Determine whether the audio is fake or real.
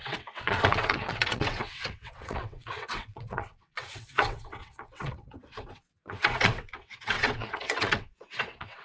fake